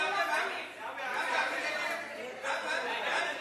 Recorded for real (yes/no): no